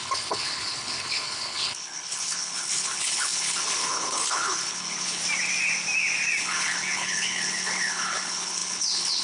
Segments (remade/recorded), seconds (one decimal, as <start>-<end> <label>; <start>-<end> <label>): 0.0-5.2 remade; 5.2-6.4 recorded; 6.4-9.2 remade